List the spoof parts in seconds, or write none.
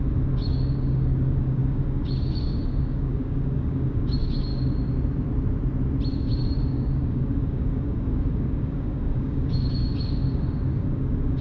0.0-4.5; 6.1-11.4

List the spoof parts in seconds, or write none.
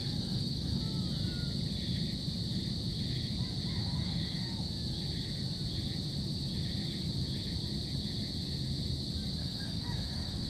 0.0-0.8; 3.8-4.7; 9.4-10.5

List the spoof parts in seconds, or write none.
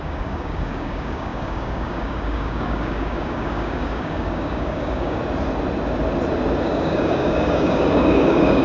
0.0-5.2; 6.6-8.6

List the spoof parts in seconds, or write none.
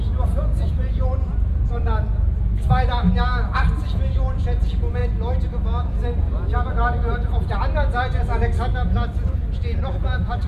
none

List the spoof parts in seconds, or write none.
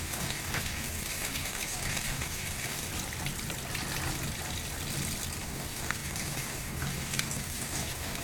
0.0-2.9; 5.4-8.2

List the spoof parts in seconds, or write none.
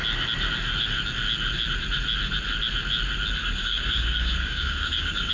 3.4-5.3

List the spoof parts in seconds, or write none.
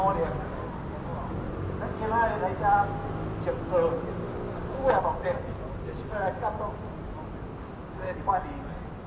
4.4-5.0; 7.5-8.2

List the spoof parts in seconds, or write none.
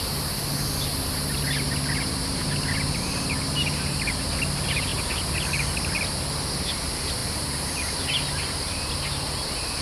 none